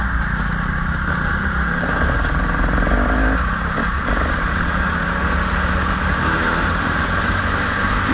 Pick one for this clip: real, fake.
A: fake